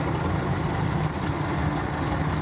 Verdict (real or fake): real